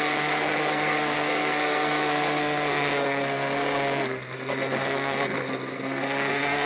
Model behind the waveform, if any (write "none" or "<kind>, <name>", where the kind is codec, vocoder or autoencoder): codec, SNAC